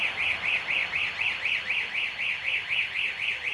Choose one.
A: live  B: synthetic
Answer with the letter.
A